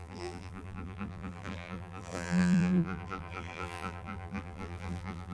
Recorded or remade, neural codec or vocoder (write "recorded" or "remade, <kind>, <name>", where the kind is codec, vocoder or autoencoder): remade, vocoder, BigVGAN v2